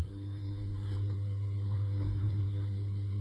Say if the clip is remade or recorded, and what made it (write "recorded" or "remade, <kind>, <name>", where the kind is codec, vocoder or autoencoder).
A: remade, codec, SNAC